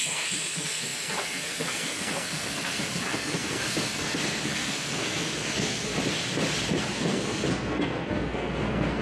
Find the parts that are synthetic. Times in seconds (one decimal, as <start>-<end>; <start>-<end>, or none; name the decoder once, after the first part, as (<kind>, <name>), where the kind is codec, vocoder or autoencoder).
0.0-5.9 (codec, SNAC); 6.8-9.0